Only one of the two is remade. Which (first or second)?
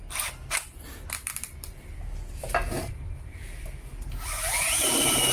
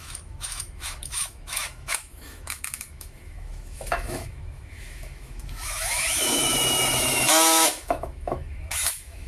second